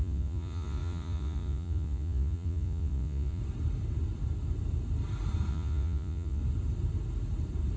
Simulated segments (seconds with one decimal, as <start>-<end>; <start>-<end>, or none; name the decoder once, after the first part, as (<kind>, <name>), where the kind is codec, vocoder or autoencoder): 0.0-3.4 (vocoder, Vocos); 5.5-6.4